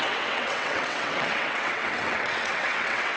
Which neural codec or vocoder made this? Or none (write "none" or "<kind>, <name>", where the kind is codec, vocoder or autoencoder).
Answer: vocoder, WaveNeXt